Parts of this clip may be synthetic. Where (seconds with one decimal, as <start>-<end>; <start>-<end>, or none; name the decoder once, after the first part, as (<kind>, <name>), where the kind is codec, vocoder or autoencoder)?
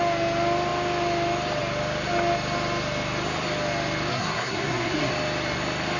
4.1-5.1 (codec, SNAC)